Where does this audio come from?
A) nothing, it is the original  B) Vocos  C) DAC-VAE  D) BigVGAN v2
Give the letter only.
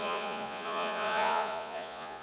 B